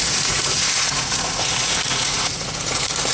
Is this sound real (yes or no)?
no